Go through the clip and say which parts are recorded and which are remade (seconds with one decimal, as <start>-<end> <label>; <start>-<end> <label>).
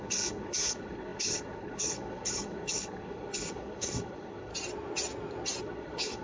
0.0-4.5 remade; 4.5-5.6 recorded; 5.6-6.2 remade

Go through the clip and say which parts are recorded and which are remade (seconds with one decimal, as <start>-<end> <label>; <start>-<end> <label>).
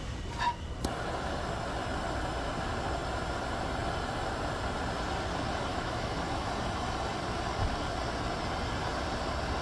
0.0-5.7 recorded; 5.7-6.5 remade; 6.5-9.6 recorded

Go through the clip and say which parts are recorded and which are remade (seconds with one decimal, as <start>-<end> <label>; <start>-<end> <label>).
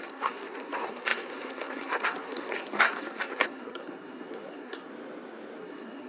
0.0-4.9 remade; 4.9-5.6 recorded; 5.6-6.1 remade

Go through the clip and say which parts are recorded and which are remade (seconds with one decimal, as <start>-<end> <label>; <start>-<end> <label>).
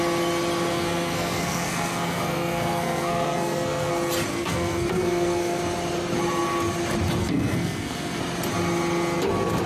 0.0-0.7 recorded; 0.7-3.9 remade; 3.9-4.3 recorded; 4.3-5.6 remade; 5.6-7.2 recorded; 7.2-8.2 remade; 8.2-9.7 recorded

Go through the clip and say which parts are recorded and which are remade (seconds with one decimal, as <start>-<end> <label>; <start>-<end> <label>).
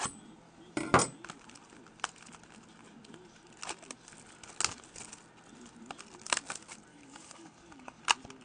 0.0-6.9 recorded; 6.9-8.0 remade; 8.0-8.4 recorded